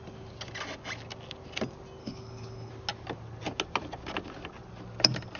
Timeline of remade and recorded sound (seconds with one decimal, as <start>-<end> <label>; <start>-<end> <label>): 0.0-2.0 recorded; 2.0-2.7 remade; 2.7-5.4 recorded